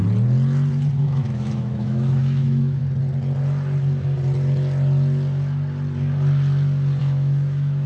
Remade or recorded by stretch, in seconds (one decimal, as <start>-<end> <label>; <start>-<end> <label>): 0.0-1.0 recorded; 1.0-2.8 remade; 2.8-7.0 recorded; 7.0-7.9 remade